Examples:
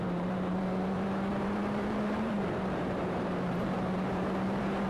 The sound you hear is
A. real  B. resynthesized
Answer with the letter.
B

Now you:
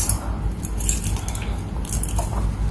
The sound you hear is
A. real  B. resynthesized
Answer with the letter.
A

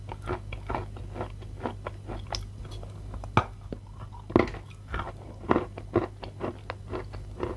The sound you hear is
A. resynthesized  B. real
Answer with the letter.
B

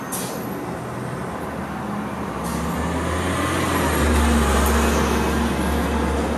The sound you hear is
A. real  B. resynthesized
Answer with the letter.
A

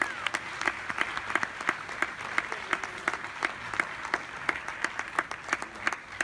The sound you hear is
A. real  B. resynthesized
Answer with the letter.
A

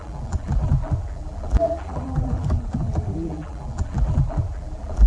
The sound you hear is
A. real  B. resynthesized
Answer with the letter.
B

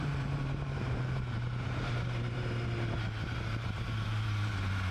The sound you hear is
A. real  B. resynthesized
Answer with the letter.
B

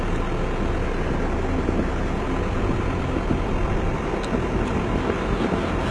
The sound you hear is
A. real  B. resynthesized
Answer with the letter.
A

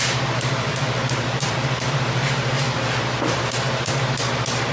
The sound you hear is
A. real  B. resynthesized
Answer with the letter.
B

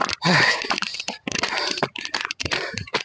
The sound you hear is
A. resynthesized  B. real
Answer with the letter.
A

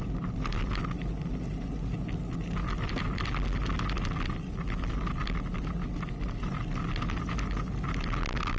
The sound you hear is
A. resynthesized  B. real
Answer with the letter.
B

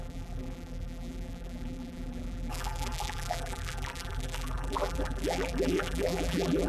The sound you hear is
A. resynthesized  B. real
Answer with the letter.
A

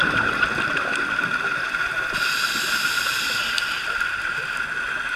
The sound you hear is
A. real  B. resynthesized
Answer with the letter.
B